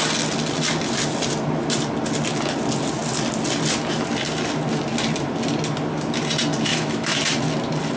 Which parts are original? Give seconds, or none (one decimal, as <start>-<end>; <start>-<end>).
0.0-6.7; 7.2-8.0